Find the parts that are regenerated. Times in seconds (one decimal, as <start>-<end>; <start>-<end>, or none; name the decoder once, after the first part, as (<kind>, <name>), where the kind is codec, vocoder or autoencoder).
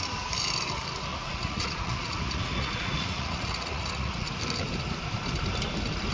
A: 1.1-4.3 (vocoder, Vocos)